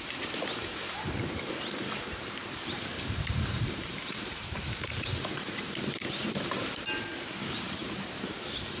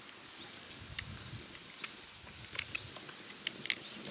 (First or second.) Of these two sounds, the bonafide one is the second